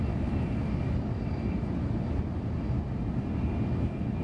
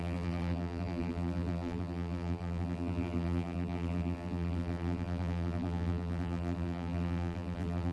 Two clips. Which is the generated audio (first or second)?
second